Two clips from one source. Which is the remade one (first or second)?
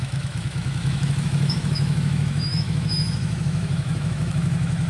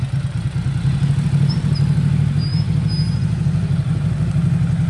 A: first